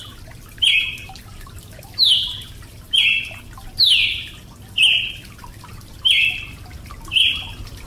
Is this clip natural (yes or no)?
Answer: yes